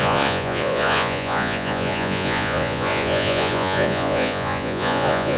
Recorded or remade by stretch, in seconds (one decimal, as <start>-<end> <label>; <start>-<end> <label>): 0.0-5.4 remade